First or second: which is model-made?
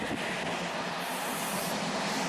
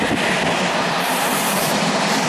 second